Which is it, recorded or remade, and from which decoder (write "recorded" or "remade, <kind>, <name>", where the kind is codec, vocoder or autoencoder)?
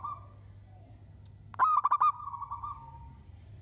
recorded